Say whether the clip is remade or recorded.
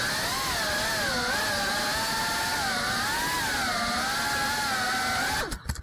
recorded